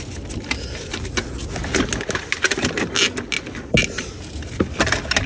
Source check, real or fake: real